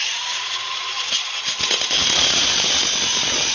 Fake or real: fake